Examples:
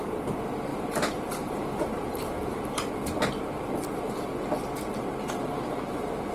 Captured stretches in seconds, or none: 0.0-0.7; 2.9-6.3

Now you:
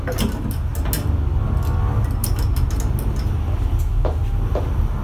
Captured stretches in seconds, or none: 0.0-5.0